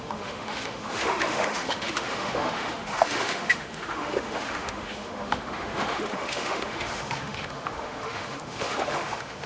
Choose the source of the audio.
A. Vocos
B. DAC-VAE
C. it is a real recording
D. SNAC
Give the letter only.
B